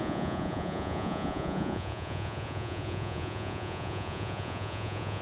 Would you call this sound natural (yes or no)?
no